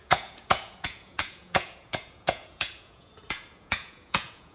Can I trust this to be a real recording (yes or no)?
no